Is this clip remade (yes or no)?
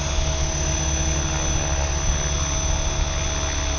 no